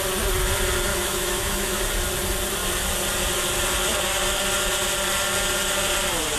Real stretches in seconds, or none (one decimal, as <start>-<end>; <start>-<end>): 0.0-0.9; 1.8-6.4

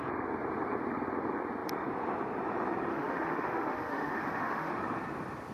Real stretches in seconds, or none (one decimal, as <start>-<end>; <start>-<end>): 0.0-2.9; 4.7-5.5

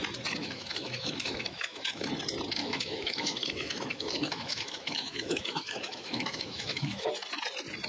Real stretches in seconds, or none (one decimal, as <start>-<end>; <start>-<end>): 0.0-0.4; 2.1-2.6; 7.1-7.9

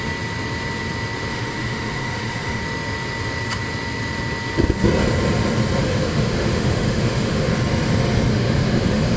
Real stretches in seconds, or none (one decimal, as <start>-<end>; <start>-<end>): 0.0-1.3; 2.6-5.8; 7.5-8.3

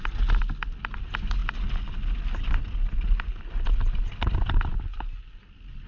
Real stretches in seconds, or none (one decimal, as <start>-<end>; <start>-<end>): 0.0-5.9

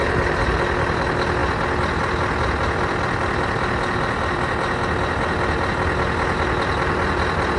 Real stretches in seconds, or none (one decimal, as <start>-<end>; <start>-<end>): 0.0-7.6

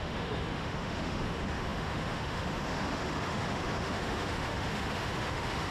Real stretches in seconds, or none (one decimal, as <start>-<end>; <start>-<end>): none

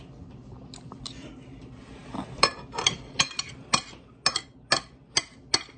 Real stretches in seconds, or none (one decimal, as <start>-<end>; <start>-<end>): 0.0-5.8